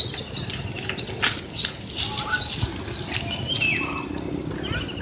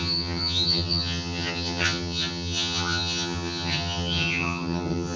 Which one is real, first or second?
first